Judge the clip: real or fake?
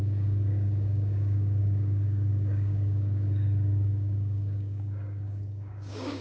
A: fake